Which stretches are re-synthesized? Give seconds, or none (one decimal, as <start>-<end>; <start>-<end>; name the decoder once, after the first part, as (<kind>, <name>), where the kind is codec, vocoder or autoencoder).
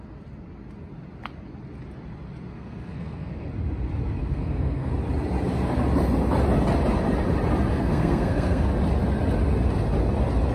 2.5-3.5 (codec, SNAC); 4.2-4.9; 7.7-8.7